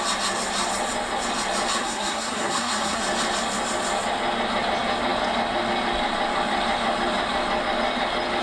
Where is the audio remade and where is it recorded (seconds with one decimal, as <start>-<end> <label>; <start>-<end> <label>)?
0.0-1.8 recorded; 1.8-3.0 remade; 3.0-8.4 recorded